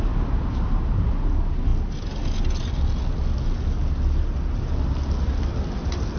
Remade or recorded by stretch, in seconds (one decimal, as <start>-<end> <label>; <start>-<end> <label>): 0.0-6.2 recorded